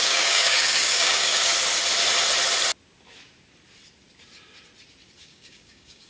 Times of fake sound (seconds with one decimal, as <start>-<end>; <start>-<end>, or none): 0.0-1.5; 5.2-6.1

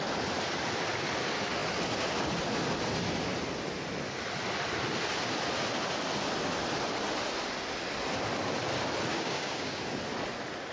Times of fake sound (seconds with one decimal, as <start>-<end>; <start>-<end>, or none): 9.1-9.8

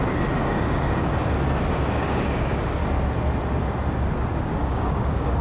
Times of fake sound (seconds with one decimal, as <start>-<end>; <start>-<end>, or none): 0.0-1.1; 1.7-2.8; 4.4-5.4

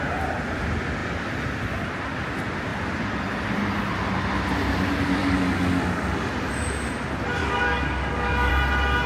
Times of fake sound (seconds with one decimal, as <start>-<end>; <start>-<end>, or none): 5.2-6.3; 7.4-8.5

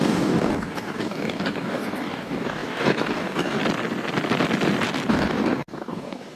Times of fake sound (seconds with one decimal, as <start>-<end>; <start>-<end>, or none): 0.0-3.6; 5.1-6.4

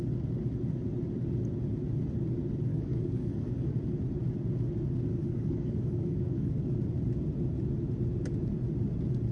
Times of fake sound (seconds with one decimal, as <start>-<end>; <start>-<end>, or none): 2.7-3.7; 5.1-6.6